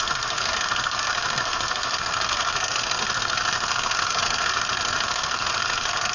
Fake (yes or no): yes